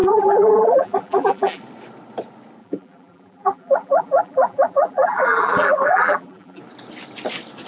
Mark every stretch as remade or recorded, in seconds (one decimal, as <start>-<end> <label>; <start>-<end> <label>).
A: 0.0-1.6 remade; 1.6-2.6 recorded; 2.6-6.6 remade; 6.6-7.7 recorded